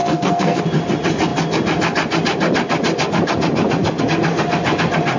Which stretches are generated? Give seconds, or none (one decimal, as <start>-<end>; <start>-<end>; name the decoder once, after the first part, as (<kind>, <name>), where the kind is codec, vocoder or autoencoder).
0.0-0.6 (codec, SNAC)